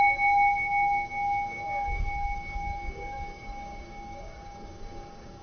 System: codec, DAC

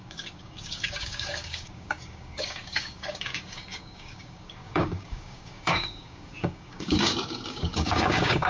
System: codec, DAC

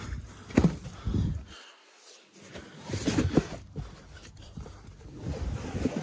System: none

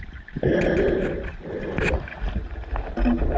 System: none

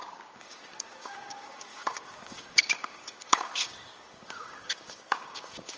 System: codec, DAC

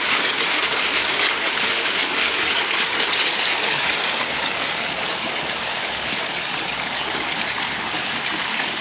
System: codec, DAC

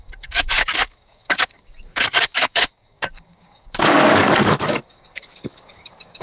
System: codec, DAC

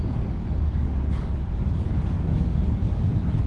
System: codec, DAC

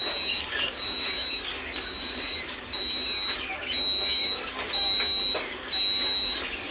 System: codec, DAC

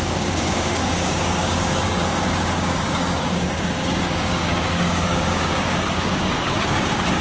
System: codec, DAC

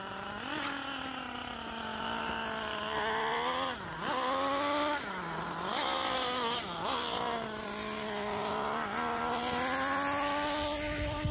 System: none